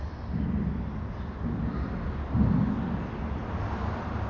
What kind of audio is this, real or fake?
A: real